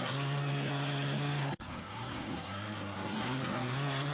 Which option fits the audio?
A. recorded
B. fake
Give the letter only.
B